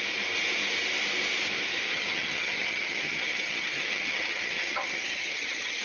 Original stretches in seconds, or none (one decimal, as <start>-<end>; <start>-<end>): 0.0-1.9